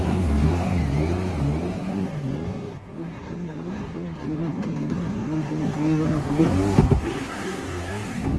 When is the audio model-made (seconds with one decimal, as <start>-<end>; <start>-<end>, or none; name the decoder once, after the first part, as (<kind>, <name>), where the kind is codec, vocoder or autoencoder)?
0.0-0.8 (codec, SNAC); 1.7-8.4